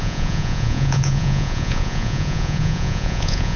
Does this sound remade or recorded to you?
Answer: remade